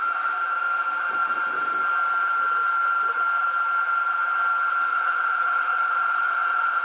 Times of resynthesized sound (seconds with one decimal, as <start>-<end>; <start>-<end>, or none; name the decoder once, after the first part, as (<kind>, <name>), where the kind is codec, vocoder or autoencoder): 4.9-6.8 (vocoder, Vocos)